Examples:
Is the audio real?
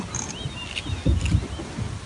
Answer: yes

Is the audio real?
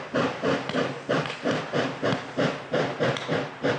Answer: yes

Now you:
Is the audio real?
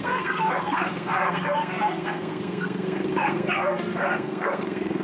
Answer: no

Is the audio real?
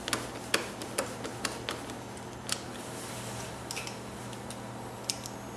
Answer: yes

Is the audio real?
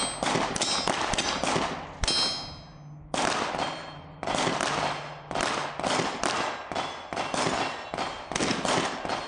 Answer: yes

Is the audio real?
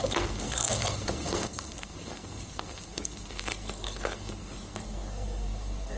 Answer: no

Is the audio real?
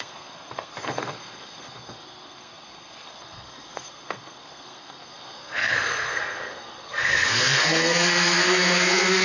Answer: no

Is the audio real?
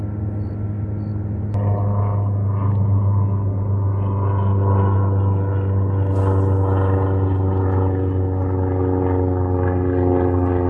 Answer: yes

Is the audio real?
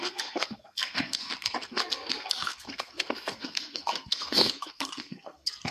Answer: no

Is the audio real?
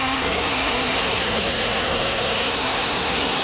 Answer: no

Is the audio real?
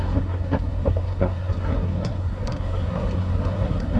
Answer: no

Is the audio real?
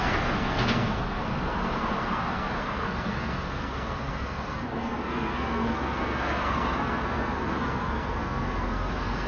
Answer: no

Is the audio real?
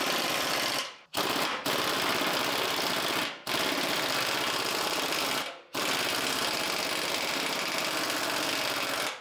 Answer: yes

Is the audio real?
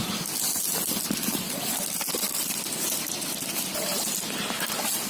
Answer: yes